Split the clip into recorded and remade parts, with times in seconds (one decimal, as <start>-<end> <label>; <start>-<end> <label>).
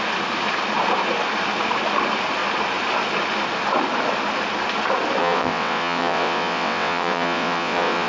0.0-5.2 recorded; 5.2-8.1 remade